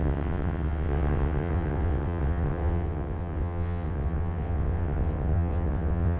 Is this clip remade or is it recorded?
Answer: remade